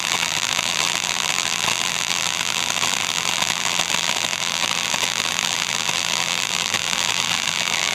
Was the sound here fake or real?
fake